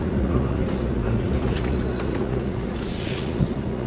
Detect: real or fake fake